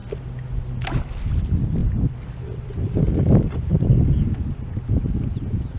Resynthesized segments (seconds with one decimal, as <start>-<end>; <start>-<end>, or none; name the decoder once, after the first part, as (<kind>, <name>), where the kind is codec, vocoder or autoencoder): 1.8-4.3 (vocoder, BigVGAN v2)